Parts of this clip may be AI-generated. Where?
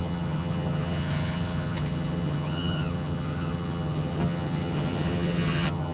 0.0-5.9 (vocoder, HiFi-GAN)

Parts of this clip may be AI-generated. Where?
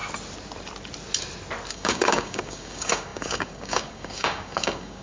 1.7-5.0 (codec, DAC)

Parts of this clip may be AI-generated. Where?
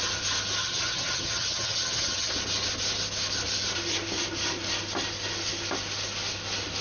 0.6-2.3 (vocoder, HiFi-GAN)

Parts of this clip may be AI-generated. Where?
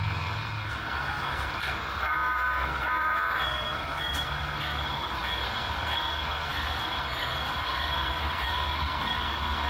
0.0-9.7 (codec, SNAC)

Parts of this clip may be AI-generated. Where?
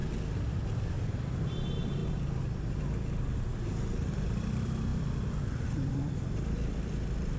1.0-2.0 (vocoder, BigVGAN v2); 4.0-7.4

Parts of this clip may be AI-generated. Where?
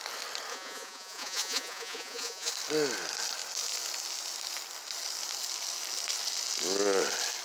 0.5-2.5 (vocoder, Vocos)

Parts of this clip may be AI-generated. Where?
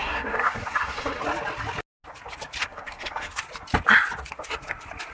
0.0-1.2 (codec, SNAC); 2.6-3.4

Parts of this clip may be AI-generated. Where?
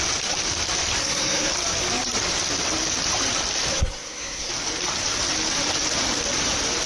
1.0-1.5 (codec, SNAC); 3.7-4.5